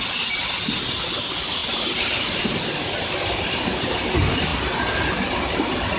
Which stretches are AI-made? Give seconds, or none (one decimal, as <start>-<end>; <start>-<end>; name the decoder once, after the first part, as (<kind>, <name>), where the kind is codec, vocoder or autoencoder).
none